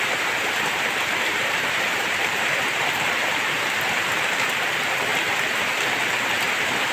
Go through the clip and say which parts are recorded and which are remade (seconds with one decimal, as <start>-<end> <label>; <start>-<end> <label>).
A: 0.0-5.1 remade; 5.1-6.4 recorded; 6.4-6.9 remade